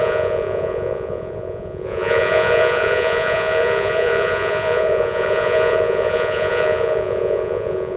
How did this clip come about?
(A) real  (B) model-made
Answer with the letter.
B